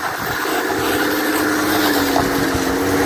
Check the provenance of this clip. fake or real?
real